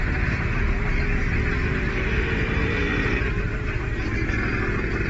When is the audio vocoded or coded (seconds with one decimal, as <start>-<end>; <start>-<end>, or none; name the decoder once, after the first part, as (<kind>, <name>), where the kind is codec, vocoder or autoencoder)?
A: 1.6-3.7 (vocoder, BigVGAN v2)